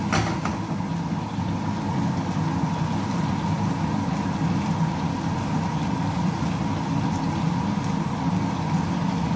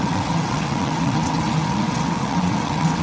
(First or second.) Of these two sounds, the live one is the first